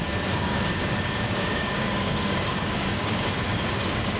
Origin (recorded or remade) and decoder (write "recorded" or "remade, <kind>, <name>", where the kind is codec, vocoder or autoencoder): remade, codec, DAC